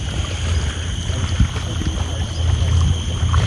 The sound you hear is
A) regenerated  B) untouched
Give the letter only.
B